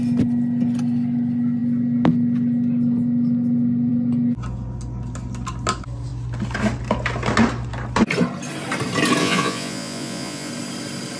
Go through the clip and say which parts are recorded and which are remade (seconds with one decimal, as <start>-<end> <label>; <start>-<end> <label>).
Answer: 0.0-9.2 recorded; 9.2-10.5 remade; 10.5-11.2 recorded